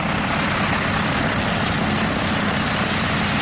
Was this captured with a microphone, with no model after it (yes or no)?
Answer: yes